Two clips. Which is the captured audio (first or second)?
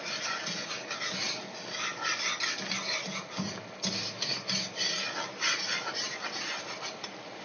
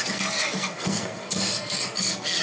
first